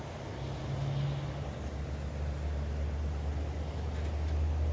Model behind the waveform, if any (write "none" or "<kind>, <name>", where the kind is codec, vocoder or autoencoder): none